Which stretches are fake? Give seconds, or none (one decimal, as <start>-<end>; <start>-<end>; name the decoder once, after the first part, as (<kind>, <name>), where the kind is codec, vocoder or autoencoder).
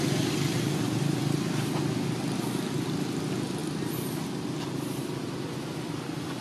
none